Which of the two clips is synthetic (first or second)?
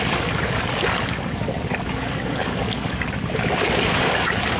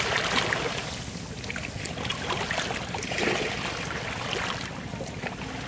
first